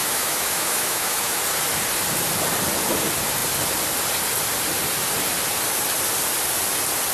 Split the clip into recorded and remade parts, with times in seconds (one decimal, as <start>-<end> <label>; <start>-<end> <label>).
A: 0.0-1.4 remade; 1.4-7.1 recorded